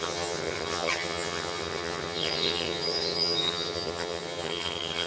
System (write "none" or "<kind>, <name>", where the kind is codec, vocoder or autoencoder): vocoder, HiFi-GAN